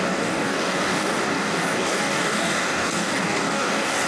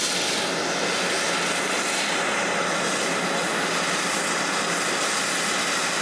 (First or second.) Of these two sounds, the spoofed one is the first